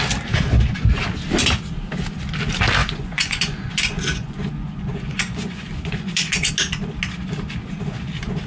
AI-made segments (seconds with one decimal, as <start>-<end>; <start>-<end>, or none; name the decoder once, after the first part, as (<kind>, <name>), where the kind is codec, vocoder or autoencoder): 2.8-6.5 (vocoder, Vocos)